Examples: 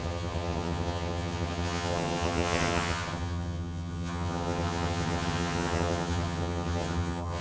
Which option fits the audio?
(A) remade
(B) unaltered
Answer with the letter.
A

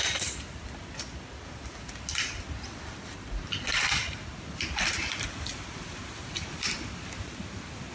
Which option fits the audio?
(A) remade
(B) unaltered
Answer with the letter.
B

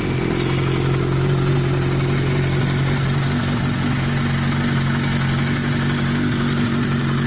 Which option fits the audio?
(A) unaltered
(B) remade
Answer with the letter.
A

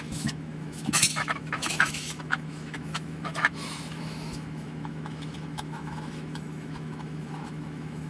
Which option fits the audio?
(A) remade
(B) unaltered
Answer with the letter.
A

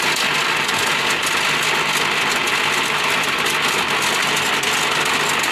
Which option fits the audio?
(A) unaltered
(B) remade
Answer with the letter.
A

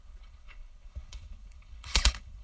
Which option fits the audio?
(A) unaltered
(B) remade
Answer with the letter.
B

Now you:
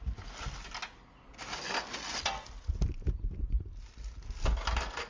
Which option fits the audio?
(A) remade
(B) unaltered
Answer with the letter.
B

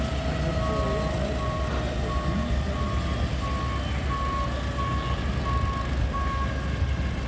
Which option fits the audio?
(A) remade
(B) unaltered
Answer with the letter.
B